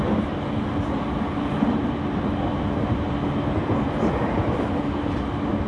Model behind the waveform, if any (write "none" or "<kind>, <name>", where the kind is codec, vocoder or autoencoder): none